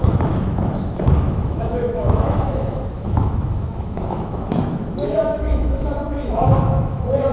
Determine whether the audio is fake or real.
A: fake